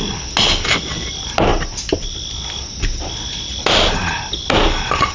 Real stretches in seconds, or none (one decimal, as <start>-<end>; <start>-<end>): 0.0-5.1